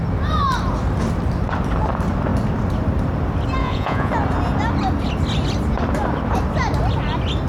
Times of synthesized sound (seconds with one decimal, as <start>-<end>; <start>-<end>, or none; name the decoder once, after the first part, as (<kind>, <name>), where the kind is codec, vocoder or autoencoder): 3.6-4.1 (vocoder, Vocos)